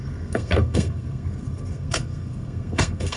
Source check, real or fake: fake